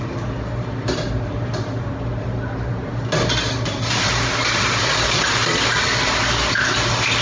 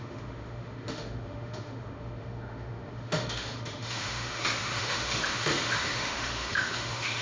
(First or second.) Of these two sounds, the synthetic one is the second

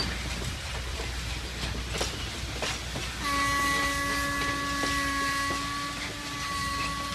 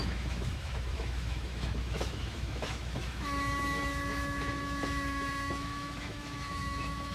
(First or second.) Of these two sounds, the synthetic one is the second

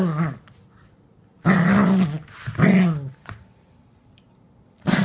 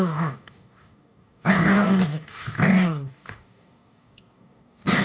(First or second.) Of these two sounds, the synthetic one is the second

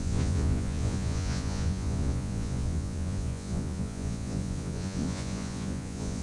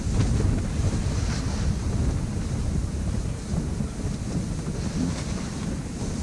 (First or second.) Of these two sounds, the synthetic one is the first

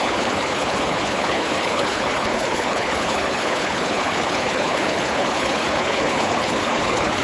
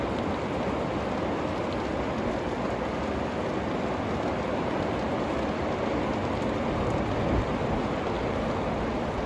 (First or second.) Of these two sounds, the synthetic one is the first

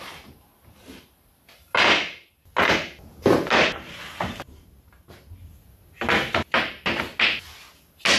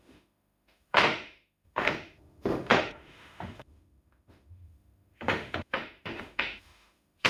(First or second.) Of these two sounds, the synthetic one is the second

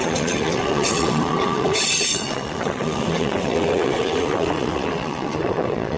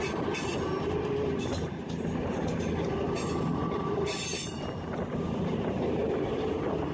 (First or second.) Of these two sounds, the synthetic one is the first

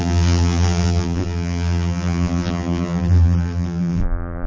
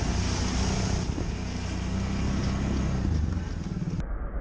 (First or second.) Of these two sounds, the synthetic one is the first